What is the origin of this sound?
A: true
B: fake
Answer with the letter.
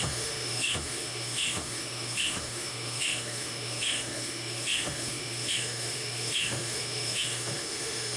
B